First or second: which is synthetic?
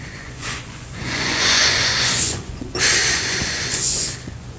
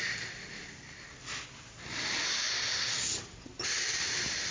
first